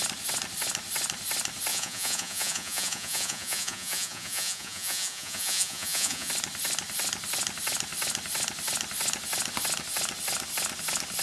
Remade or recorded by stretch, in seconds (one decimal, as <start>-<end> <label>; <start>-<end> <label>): 0.0-1.7 recorded; 1.7-6.3 remade; 6.3-11.2 recorded

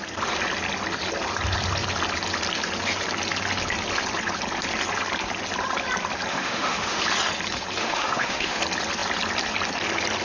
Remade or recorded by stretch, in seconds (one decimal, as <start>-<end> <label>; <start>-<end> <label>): 0.0-6.3 recorded; 6.3-7.0 remade; 7.0-7.8 recorded; 7.8-8.6 remade; 8.6-10.2 recorded

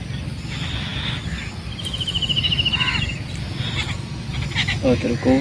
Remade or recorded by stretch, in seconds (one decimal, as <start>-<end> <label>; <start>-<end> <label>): 0.0-5.4 recorded

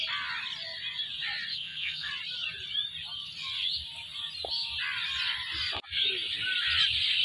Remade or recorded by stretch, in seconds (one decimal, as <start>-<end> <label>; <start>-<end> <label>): 0.0-1.5 recorded; 1.5-2.1 remade; 2.1-7.2 recorded

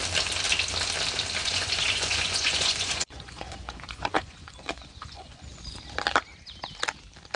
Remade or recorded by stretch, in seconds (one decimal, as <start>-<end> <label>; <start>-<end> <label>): 0.0-1.4 recorded; 1.4-5.8 remade; 5.8-7.4 recorded

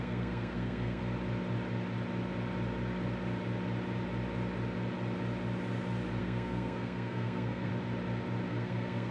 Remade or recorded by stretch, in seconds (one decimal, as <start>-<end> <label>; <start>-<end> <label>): 0.0-1.0 remade; 1.0-6.2 recorded; 6.2-7.7 remade; 7.7-8.5 recorded; 8.5-9.1 remade

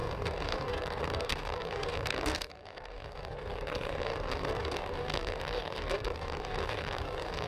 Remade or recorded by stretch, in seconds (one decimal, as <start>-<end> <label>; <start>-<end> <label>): 0.0-7.5 remade